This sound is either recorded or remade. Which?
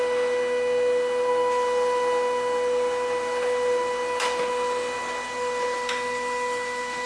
recorded